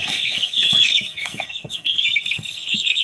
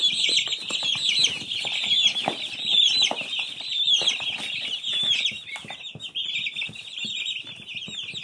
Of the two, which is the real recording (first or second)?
second